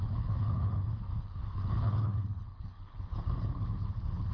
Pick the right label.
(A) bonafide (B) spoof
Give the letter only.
B